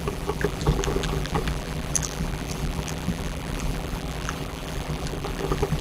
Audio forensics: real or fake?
fake